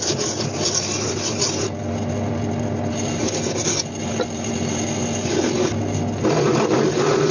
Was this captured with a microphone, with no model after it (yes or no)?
yes